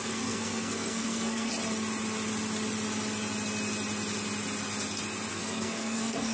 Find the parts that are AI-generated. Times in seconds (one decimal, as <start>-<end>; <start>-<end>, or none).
0.0-1.5; 5.3-6.3